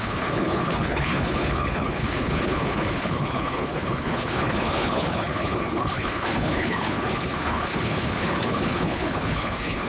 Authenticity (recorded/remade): remade